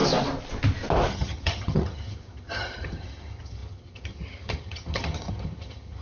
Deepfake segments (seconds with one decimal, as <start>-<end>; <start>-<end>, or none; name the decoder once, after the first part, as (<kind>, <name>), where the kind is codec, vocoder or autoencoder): 1.1-6.0 (vocoder, HiFi-GAN)